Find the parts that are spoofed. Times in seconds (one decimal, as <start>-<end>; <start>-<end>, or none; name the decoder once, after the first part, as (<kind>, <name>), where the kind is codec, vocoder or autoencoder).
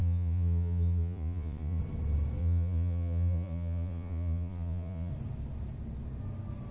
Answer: 0.0-1.8 (vocoder, Vocos); 2.4-5.1